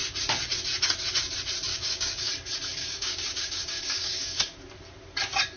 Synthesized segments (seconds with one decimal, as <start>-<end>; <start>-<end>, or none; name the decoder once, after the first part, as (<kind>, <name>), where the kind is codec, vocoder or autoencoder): 1.7-2.3 (codec, DAC); 2.8-4.6